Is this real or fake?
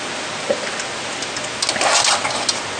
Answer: real